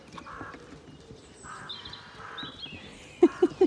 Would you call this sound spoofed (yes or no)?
no